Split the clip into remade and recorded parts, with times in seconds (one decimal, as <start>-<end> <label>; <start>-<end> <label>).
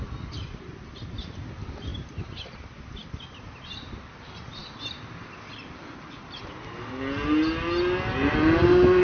0.0-1.9 recorded; 1.9-2.5 remade; 2.5-9.0 recorded